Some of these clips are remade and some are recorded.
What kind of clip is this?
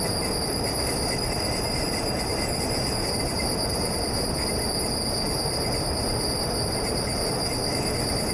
recorded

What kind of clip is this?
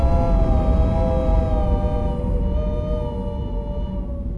recorded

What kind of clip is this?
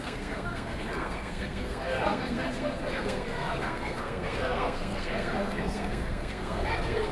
remade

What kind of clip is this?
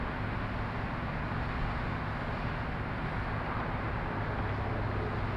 recorded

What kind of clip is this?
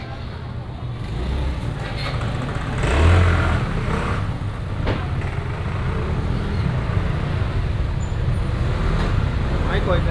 recorded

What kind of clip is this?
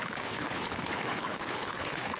remade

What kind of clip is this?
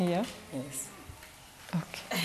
recorded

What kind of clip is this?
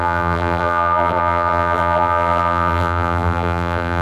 remade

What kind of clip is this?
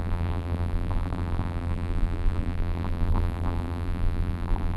remade